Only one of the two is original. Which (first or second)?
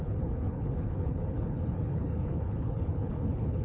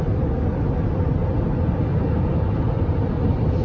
second